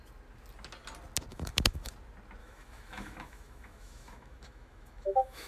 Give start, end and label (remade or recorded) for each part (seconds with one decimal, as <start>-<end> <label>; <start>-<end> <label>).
0.0-1.3 recorded; 1.3-1.9 remade; 1.9-2.4 recorded; 2.4-5.5 remade

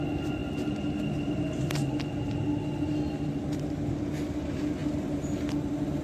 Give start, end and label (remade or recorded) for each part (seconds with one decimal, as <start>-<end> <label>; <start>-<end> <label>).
0.0-6.0 recorded

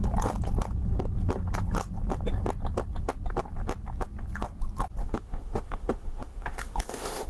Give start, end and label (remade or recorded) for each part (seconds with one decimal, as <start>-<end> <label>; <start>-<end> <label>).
0.0-5.0 recorded; 5.0-7.3 remade

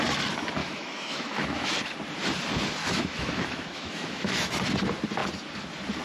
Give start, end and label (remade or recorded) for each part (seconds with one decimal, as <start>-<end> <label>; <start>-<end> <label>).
0.0-0.6 recorded; 0.6-1.7 remade; 1.7-2.8 recorded; 2.8-4.5 remade; 4.5-6.0 recorded

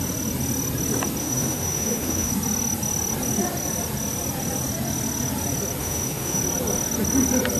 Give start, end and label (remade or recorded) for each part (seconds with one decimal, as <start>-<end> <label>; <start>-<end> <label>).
0.0-1.2 recorded; 1.2-2.3 remade; 2.3-5.8 recorded; 5.8-6.4 remade; 6.4-7.6 recorded

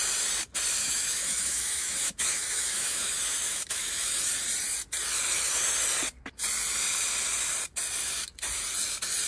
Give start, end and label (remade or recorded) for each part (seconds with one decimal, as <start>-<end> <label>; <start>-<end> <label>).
0.0-0.8 recorded; 0.8-4.2 remade; 4.2-9.3 recorded

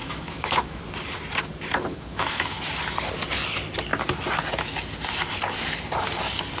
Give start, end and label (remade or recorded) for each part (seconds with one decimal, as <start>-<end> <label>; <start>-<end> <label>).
0.0-0.8 remade; 0.8-1.9 recorded; 1.9-2.7 remade; 2.7-6.6 recorded

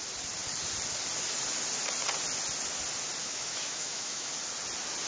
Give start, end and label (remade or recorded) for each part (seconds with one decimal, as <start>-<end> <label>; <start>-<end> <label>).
0.0-3.2 recorded; 3.2-4.3 remade; 4.3-5.1 recorded